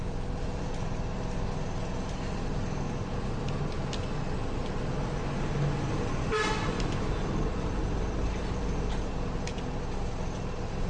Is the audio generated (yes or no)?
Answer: no